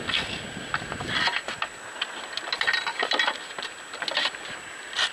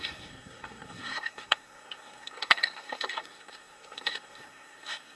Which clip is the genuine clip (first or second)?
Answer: first